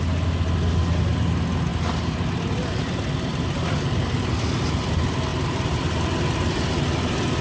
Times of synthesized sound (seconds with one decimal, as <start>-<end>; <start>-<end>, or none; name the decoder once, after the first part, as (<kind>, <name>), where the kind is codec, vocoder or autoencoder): 3.3-4.0 (vocoder, BigVGAN v2); 5.3-6.7